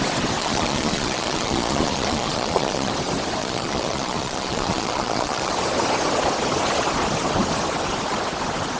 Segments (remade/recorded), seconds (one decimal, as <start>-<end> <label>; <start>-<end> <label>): 0.0-0.4 recorded; 0.4-2.9 remade; 2.9-3.4 recorded; 3.4-5.5 remade; 5.5-8.8 recorded